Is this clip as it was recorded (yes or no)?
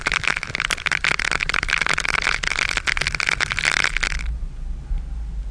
yes